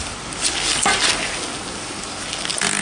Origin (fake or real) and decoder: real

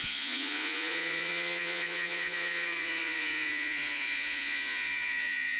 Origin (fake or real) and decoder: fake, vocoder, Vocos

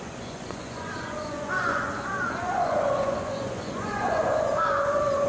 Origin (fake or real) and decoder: fake, vocoder, Vocos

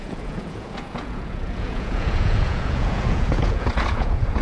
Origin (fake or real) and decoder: fake, vocoder, Vocos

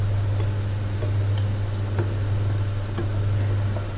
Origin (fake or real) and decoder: real